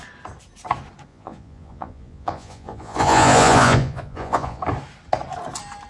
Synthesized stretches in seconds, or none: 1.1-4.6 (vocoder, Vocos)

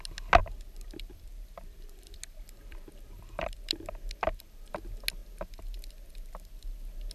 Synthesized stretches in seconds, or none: 0.4-4.7 (vocoder, BigVGAN v2)

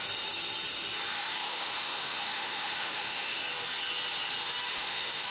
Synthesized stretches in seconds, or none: 1.1-3.4 (autoencoder, DAC-VAE); 4.7-5.3

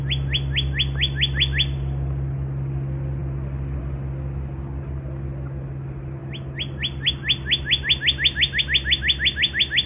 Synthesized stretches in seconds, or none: none